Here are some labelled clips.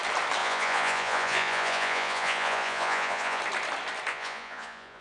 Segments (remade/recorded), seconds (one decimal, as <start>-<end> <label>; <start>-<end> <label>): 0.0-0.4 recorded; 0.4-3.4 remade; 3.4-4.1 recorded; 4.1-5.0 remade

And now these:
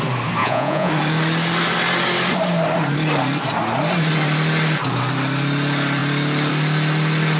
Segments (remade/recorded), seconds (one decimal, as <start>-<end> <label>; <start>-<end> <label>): 0.0-0.4 recorded; 0.4-0.9 remade; 0.9-7.4 recorded

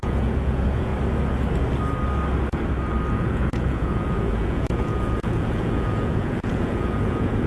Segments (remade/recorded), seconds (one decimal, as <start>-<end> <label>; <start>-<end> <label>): 0.0-0.9 remade; 0.9-3.1 recorded; 3.1-7.5 remade

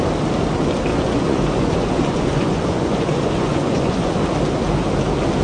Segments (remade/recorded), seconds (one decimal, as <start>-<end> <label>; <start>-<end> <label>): 0.0-0.9 recorded; 0.9-4.1 remade; 4.1-5.4 recorded